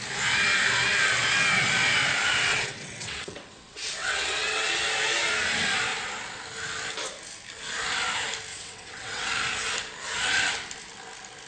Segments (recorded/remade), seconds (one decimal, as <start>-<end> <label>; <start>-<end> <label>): 0.0-2.5 recorded; 2.5-4.7 remade; 4.7-8.5 recorded; 8.5-9.3 remade; 9.3-11.5 recorded